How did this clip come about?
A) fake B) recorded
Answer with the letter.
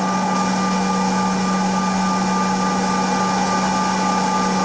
B